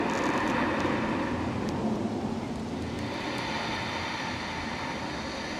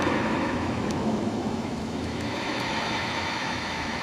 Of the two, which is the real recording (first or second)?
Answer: first